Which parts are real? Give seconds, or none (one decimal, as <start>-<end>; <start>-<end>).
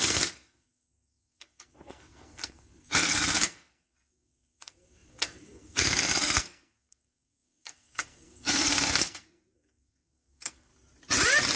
10.7-11.6